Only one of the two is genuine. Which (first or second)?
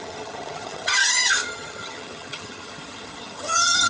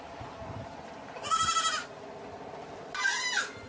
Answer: second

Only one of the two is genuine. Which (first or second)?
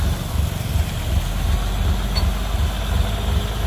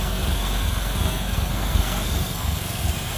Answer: first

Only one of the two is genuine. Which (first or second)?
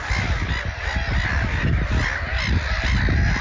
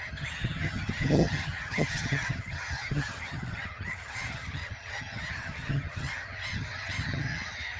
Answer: first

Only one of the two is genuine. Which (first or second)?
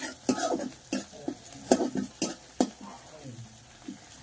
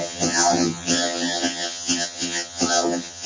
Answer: first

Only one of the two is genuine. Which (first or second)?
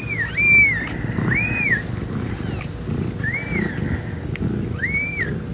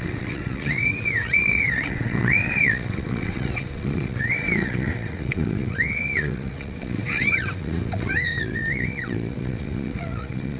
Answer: first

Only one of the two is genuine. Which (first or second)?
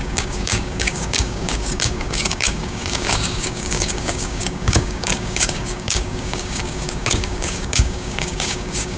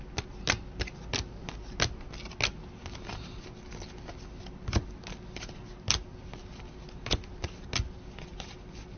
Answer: second